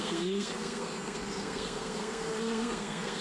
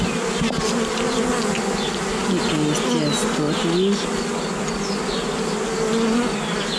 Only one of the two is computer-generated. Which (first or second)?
first